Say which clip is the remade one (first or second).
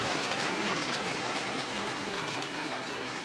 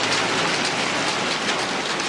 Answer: first